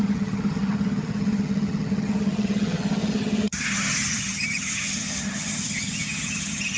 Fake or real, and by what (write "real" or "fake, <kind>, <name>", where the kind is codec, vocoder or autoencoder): fake, vocoder, HiFi-GAN